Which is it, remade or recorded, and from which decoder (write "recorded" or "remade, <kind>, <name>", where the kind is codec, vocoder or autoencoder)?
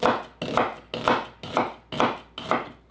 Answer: recorded